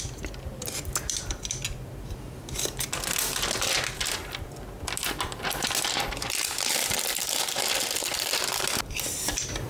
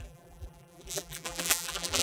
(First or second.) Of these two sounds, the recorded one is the first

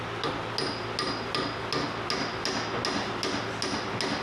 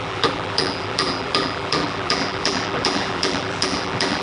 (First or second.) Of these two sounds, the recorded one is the first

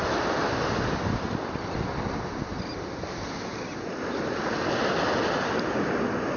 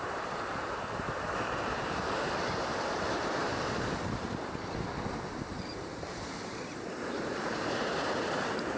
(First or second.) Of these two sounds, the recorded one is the first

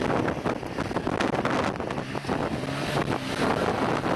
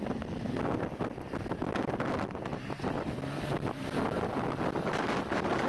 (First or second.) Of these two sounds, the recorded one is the first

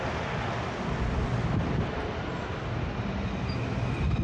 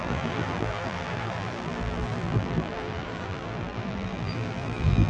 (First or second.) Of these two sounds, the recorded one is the first